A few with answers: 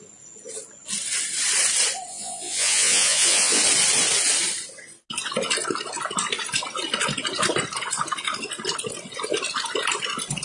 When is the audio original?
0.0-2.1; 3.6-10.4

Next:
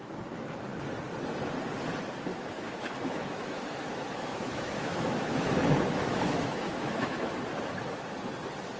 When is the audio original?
0.0-2.3; 7.3-8.8

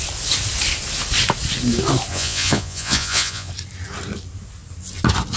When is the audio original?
0.0-2.1; 3.5-5.4

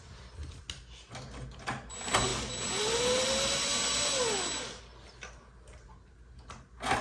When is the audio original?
0.0-7.0